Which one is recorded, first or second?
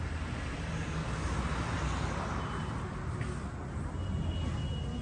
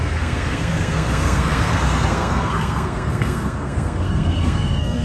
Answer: first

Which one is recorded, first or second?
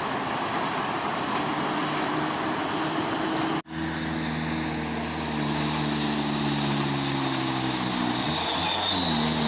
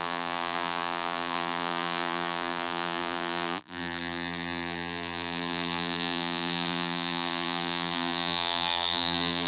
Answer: first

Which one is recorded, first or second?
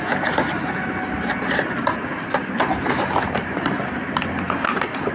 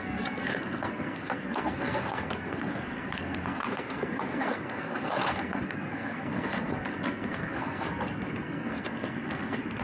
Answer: first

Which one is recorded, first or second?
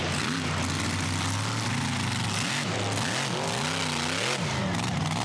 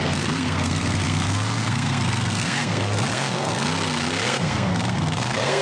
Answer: first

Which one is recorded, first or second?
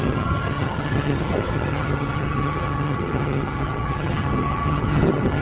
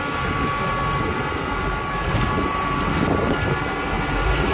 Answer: second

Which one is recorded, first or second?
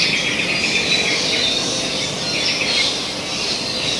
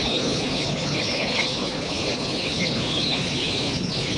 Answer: first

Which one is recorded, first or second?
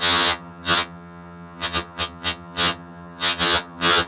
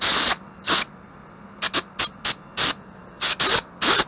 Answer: second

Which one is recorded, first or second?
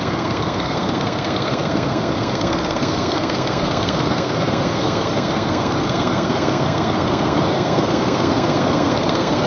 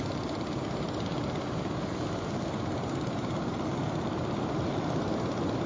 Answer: second